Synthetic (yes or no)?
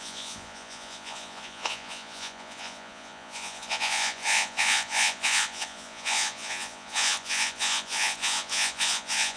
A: yes